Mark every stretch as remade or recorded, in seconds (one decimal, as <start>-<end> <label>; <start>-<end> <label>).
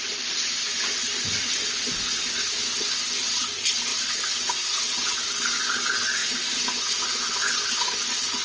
0.0-8.4 recorded